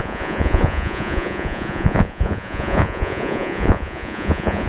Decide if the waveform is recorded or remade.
remade